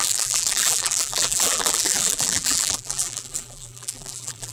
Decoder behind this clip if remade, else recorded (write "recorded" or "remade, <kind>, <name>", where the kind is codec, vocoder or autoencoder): remade, vocoder, BigVGAN v2